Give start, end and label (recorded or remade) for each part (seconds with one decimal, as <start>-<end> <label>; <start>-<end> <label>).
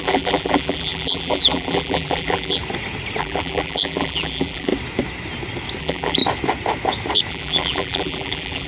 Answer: 0.0-2.6 remade; 2.6-3.2 recorded; 3.2-4.7 remade; 4.7-5.8 recorded; 5.8-6.2 remade; 6.2-7.3 recorded; 7.3-8.7 remade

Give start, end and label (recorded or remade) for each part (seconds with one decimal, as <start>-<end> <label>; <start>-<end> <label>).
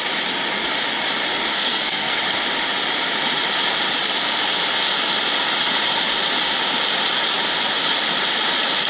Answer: 0.0-1.5 recorded; 1.5-2.2 remade; 2.2-8.9 recorded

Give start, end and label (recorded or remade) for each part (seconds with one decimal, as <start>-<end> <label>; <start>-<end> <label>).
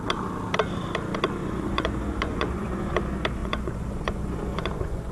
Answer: 0.0-1.4 recorded; 1.4-3.0 remade; 3.0-3.4 recorded; 3.4-5.1 remade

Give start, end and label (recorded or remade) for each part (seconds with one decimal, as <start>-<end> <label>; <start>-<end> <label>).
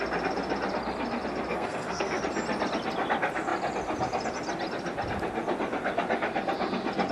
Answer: 0.0-1.5 recorded; 1.5-2.2 remade; 2.2-7.1 recorded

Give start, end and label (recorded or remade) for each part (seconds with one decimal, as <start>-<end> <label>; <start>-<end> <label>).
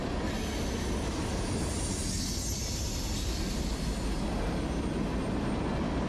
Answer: 0.0-6.1 recorded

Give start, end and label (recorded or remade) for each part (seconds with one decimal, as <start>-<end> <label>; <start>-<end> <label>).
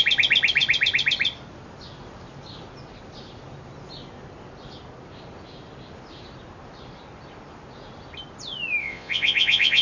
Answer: 0.0-8.8 recorded; 8.8-9.8 remade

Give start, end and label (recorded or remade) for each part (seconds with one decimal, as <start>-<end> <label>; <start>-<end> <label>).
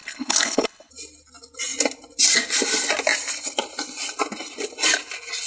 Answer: 0.0-0.9 remade; 0.9-5.5 recorded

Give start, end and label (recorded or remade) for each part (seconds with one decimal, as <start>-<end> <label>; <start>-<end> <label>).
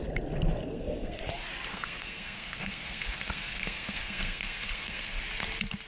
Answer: 0.0-0.6 recorded; 0.6-1.2 remade; 1.2-1.7 recorded; 1.7-5.2 remade; 5.2-5.9 recorded